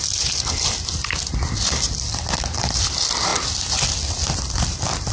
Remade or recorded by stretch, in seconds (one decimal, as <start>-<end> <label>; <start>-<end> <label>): 0.0-5.1 recorded